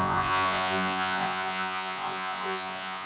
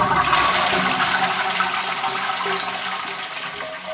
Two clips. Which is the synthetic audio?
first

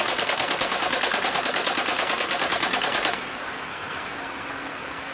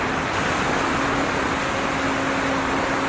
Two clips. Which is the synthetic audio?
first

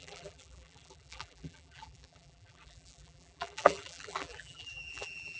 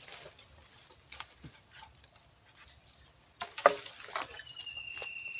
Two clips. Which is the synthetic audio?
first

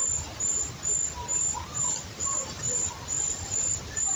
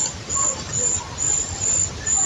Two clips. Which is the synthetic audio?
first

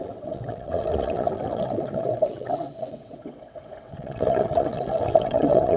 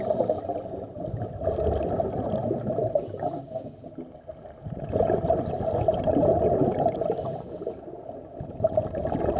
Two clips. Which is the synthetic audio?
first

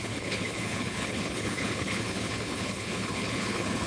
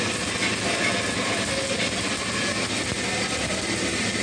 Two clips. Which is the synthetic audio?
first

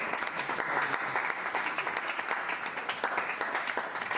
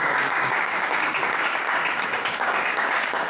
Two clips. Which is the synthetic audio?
second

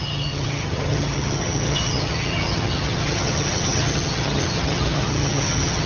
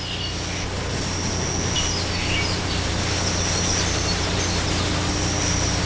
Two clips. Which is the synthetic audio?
first